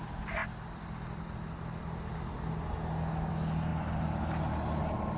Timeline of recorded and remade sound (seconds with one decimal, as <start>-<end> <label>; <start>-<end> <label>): 0.0-5.2 recorded

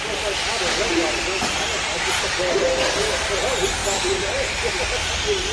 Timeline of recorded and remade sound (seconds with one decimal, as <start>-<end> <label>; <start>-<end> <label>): 0.0-3.8 recorded; 3.8-4.8 remade; 4.8-5.5 recorded

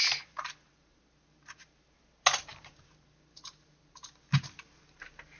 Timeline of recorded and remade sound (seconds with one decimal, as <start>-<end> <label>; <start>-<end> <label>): 0.0-2.0 remade; 2.0-2.5 recorded; 2.5-4.1 remade; 4.1-5.4 recorded

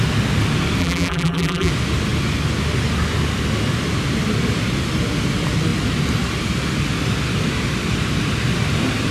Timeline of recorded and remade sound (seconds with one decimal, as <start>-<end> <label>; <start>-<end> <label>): 0.0-0.8 recorded; 0.8-1.7 remade; 1.7-9.1 recorded

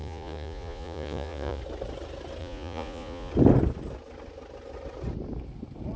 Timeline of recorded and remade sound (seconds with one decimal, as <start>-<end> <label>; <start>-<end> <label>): 0.0-1.6 remade; 1.6-2.4 recorded; 2.4-3.3 remade; 3.3-6.0 recorded